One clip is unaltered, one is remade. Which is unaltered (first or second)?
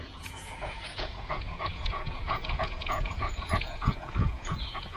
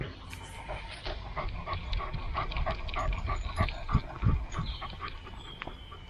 second